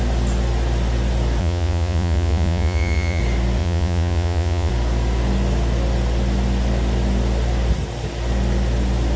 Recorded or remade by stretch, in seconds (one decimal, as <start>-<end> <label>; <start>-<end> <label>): 0.0-1.4 recorded; 1.4-3.2 remade; 3.2-3.6 recorded; 3.6-4.7 remade; 4.7-9.2 recorded